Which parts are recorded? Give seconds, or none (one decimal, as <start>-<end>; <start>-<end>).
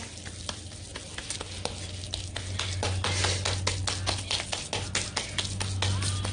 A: 0.0-6.3